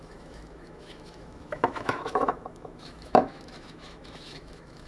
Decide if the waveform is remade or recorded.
remade